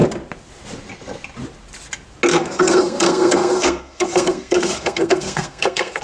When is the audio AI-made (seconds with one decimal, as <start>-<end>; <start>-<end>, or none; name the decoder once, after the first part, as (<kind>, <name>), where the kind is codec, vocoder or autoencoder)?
2.3-6.0 (codec, SNAC)